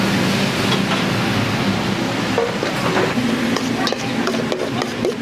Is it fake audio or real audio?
real